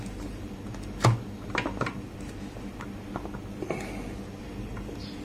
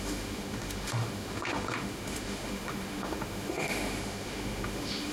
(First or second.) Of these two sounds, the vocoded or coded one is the second